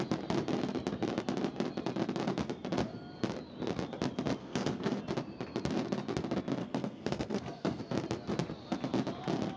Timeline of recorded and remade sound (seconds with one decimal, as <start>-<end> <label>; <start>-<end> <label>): 0.0-4.4 recorded; 4.4-5.0 remade; 5.0-6.6 recorded; 6.6-7.8 remade; 7.8-9.6 recorded